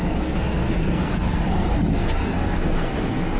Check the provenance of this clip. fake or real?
fake